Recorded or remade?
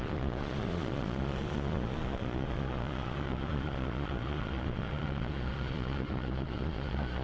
remade